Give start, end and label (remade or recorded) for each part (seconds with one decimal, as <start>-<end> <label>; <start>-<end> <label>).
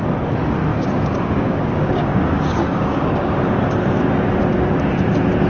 0.0-0.7 recorded; 0.7-3.3 remade; 3.3-5.5 recorded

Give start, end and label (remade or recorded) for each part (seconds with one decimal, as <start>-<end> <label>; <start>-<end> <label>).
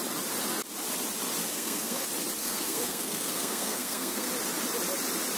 0.0-1.4 recorded; 1.4-2.0 remade; 2.0-2.4 recorded; 2.4-4.3 remade; 4.3-5.4 recorded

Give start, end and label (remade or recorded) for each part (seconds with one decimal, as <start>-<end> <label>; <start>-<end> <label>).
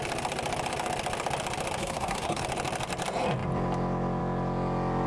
0.0-1.8 recorded; 1.8-2.4 remade; 2.4-5.1 recorded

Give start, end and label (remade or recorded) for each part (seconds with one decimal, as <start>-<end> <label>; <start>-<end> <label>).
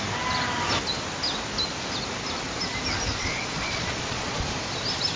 0.0-3.1 recorded; 3.1-4.4 remade; 4.4-5.2 recorded